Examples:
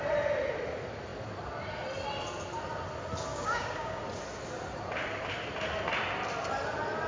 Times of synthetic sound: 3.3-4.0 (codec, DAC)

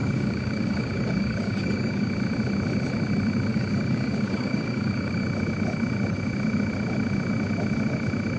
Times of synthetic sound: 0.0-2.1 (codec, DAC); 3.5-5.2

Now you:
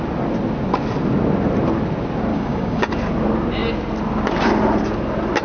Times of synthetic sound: 2.3-2.9 (codec, DAC)